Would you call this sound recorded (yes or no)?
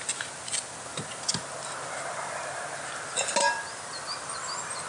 yes